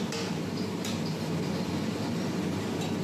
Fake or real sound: fake